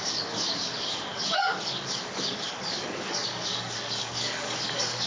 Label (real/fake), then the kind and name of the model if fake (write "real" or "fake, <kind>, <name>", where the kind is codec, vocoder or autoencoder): fake, codec, DAC